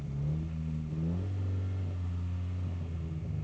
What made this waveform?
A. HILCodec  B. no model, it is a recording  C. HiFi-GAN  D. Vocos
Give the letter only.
B